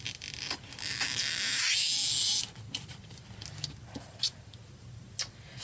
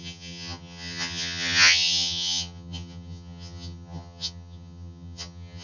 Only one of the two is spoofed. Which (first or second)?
second